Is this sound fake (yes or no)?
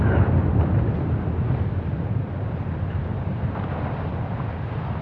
no